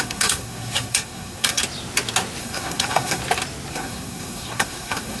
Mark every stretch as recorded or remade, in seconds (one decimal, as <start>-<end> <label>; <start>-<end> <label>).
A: 0.0-1.6 remade; 1.6-2.4 recorded; 2.4-3.2 remade; 3.2-3.7 recorded; 3.7-5.2 remade